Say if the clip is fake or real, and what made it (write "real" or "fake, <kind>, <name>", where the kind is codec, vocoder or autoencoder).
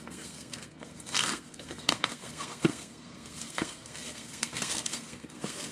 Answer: fake, codec, SNAC